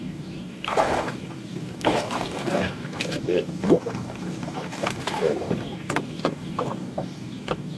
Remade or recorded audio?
remade